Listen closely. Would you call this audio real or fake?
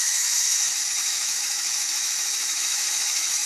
fake